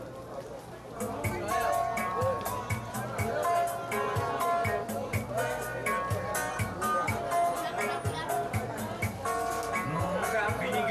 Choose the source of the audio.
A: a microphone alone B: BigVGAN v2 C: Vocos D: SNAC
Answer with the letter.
A